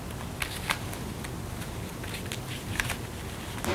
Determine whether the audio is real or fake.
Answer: real